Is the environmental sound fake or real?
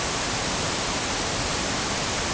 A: real